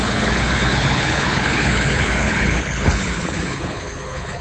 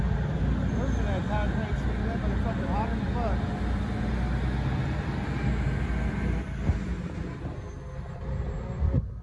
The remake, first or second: first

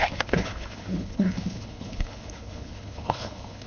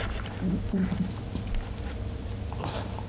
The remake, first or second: first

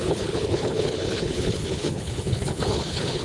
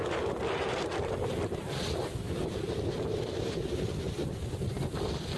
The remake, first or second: first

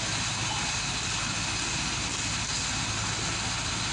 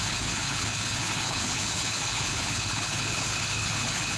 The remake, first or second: second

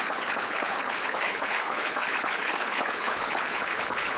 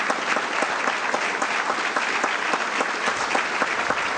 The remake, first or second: first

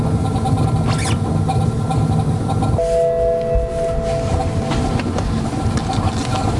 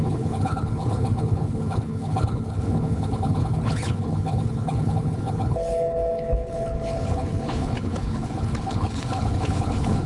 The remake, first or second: second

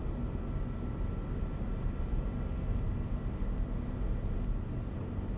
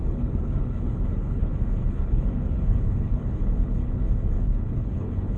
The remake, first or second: second